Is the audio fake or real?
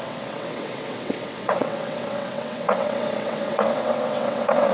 fake